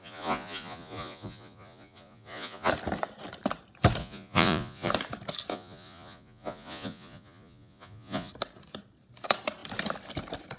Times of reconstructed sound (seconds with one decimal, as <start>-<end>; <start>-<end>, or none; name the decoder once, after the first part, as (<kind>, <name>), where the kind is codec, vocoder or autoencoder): 0.0-2.7 (vocoder, Vocos); 4.0-4.9; 5.5-8.3